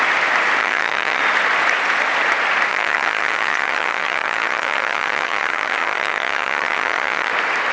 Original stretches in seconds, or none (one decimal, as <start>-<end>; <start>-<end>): 0.0-0.6; 1.2-2.7; 7.3-7.7